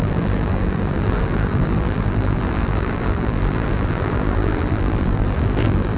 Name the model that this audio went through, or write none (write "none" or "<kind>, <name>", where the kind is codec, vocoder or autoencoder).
vocoder, BigVGAN v2